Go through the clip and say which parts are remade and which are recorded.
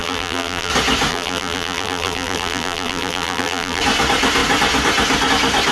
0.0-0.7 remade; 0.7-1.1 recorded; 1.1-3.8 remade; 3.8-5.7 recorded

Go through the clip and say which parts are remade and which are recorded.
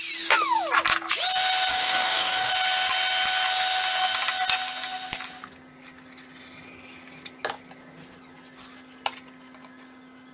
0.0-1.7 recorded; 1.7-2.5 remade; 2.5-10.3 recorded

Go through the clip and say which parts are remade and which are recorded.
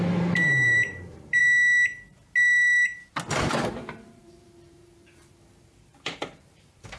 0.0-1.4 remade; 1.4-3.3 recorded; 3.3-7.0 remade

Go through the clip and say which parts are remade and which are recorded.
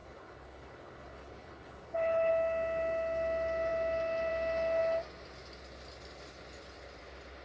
0.0-2.3 remade; 2.3-7.4 recorded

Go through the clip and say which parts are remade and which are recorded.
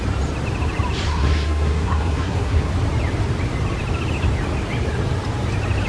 0.0-1.1 recorded; 1.1-2.7 remade; 2.7-5.9 recorded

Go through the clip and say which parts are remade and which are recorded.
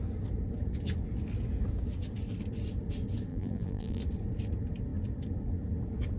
0.0-3.3 recorded; 3.3-4.0 remade; 4.0-6.2 recorded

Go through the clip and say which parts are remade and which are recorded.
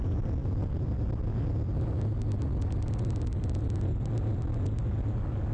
0.0-5.5 recorded